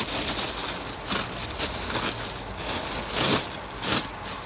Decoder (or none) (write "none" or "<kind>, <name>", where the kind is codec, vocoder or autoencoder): none